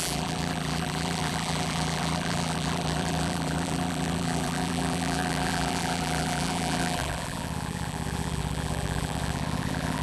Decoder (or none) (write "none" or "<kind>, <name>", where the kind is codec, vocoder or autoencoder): vocoder, BigVGAN v2